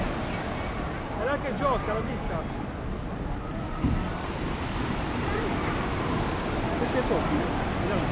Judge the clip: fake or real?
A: real